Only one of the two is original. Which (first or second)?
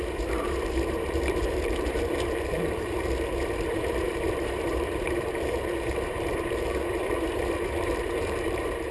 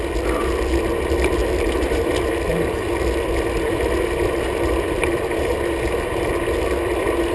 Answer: second